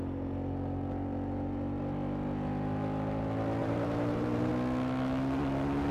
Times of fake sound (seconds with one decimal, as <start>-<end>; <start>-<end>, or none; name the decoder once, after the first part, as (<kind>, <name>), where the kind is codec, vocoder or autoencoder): 3.6-4.5 (vocoder, BigVGAN v2)